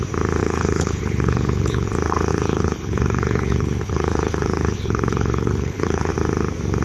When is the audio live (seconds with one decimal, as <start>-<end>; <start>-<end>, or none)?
0.0-0.4; 1.9-2.3; 6.1-6.8